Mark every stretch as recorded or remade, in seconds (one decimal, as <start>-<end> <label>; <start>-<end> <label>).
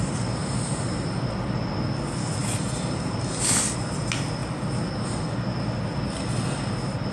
0.0-0.4 recorded; 0.4-1.3 remade; 1.3-2.4 recorded; 2.4-3.2 remade; 3.2-7.1 recorded